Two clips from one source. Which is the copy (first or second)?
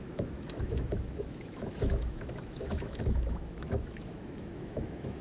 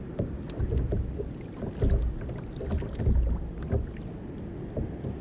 first